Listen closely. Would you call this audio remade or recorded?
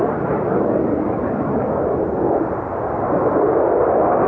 recorded